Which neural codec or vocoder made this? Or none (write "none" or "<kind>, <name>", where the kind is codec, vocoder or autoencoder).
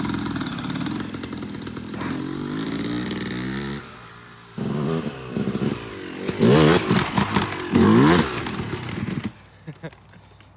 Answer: none